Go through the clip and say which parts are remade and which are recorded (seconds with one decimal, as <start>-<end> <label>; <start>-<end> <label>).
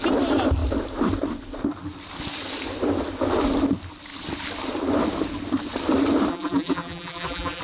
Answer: 0.0-6.3 recorded; 6.3-7.6 remade